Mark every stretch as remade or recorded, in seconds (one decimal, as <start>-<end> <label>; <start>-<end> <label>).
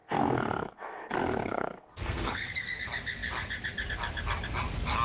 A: 0.0-2.8 remade; 2.8-5.0 recorded